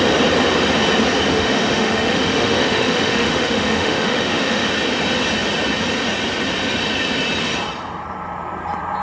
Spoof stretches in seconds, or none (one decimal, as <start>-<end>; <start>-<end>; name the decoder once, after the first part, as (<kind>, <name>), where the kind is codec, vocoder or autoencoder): 1.3-4.7 (autoencoder, DAC-VAE)